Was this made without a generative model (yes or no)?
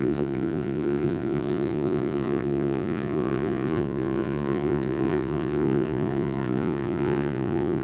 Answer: no